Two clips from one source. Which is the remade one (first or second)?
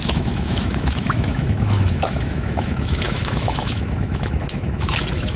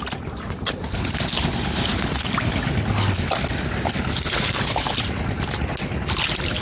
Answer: first